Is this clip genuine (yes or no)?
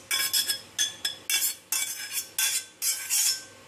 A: yes